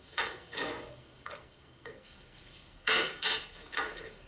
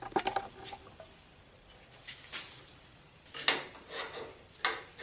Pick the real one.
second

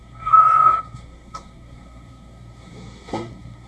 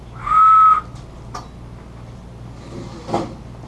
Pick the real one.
second